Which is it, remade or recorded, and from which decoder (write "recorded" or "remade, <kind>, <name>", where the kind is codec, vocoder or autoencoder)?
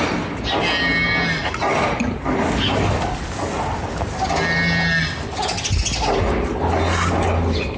recorded